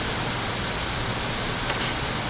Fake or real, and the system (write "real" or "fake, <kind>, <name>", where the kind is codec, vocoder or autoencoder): real